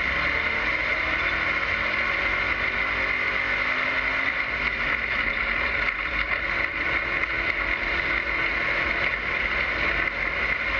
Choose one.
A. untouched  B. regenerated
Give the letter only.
A